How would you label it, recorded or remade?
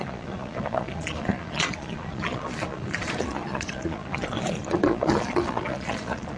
remade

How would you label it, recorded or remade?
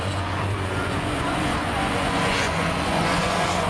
remade